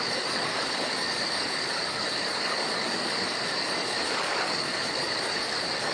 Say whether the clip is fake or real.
fake